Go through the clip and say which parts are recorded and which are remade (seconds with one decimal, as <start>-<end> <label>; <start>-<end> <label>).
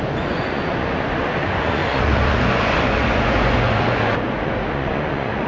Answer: 0.0-5.5 remade